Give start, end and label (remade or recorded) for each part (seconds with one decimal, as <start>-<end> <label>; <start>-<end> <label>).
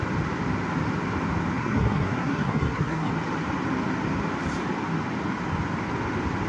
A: 0.0-1.6 recorded; 1.6-3.1 remade; 3.1-6.5 recorded